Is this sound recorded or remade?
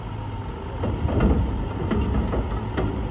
recorded